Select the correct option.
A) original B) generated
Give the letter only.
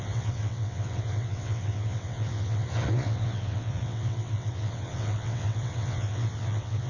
B